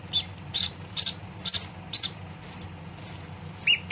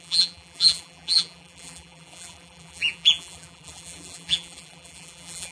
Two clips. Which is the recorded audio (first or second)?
first